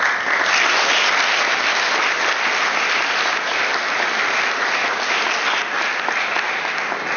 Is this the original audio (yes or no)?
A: yes